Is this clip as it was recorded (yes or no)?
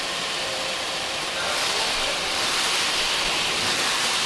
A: no